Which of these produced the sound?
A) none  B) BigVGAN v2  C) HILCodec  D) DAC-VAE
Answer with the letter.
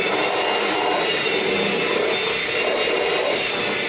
A